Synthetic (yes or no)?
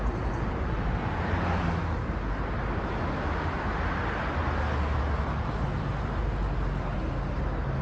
no